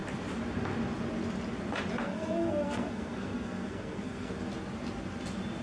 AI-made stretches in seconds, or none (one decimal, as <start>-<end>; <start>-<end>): 2.0-4.3